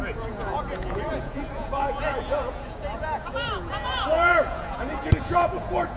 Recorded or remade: remade